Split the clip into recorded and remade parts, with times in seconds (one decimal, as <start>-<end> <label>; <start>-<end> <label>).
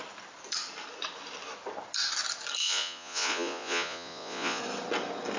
0.0-2.6 recorded; 2.6-4.6 remade; 4.6-5.4 recorded